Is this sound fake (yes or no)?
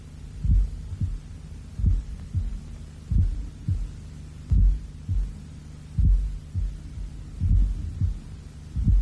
no